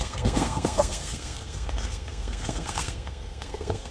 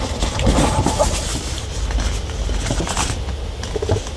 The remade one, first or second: first